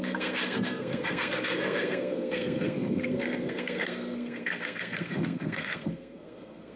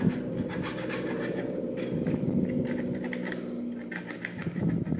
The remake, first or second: first